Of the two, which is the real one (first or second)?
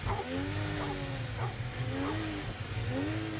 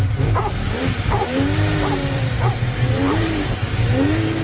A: first